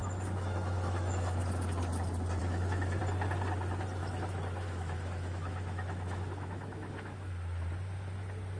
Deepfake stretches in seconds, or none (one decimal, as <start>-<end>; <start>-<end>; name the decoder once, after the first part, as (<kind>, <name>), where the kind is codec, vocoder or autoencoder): 0.0-1.4 (autoencoder, DAC-VAE); 2.4-3.0; 4.0-7.3